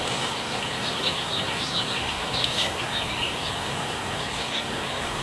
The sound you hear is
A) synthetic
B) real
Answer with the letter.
A